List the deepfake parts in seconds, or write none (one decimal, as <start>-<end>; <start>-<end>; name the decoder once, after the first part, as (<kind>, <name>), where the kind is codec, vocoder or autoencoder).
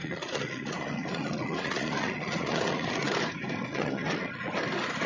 0.0-3.1 (vocoder, Vocos); 3.7-4.5